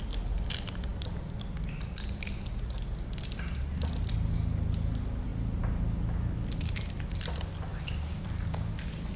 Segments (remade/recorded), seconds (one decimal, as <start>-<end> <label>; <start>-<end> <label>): 0.0-9.2 recorded